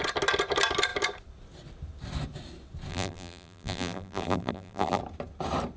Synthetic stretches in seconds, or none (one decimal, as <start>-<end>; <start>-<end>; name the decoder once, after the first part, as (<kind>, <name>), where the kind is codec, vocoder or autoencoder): 2.9-5.0 (vocoder, BigVGAN v2)